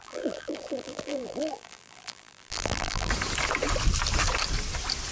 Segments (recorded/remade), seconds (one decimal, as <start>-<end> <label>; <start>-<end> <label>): 0.0-3.1 remade; 3.1-5.1 recorded

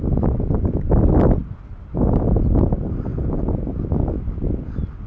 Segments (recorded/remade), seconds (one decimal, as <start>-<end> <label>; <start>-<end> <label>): 0.0-5.1 recorded